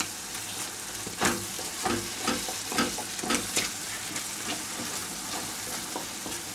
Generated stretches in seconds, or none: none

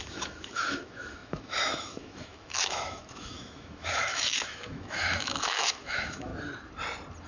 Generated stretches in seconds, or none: 0.0-6.3

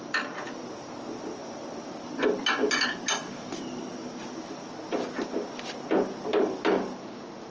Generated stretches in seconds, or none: none